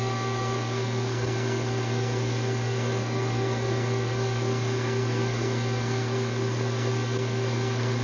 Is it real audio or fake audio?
fake